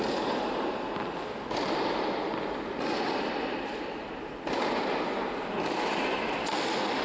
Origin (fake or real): real